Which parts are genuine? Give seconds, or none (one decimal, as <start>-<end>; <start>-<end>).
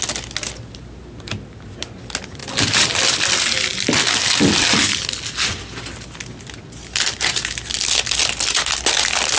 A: 0.0-2.4; 3.0-9.4